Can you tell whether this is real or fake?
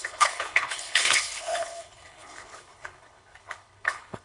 fake